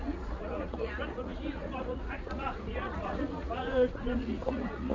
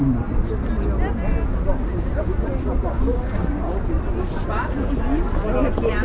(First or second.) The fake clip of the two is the first